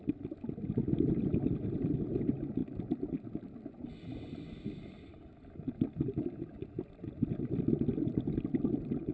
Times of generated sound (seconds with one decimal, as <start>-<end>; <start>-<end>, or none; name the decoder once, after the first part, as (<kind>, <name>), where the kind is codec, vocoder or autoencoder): none